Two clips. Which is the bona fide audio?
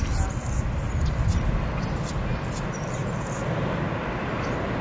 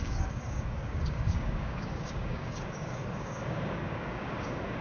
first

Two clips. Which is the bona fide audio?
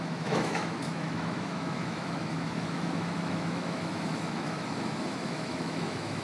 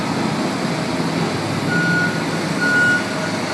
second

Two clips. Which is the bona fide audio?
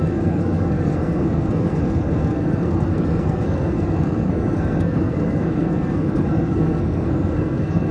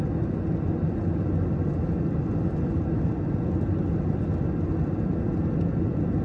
second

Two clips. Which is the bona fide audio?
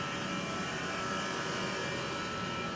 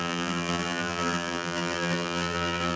first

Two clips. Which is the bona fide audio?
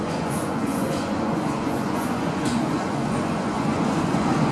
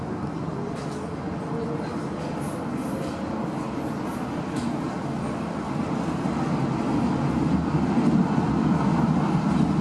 second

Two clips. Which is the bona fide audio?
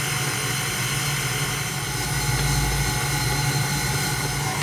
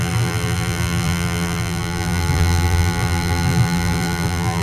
first